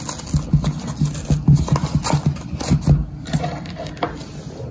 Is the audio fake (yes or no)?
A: no